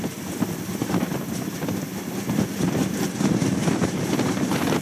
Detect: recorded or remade recorded